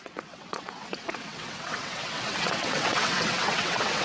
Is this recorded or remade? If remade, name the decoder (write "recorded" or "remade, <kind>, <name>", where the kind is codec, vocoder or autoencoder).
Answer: remade, vocoder, WaveNeXt